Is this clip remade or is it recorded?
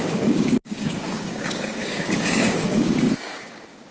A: remade